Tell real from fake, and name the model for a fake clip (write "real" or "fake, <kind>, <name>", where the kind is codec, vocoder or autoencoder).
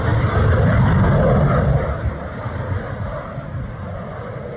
real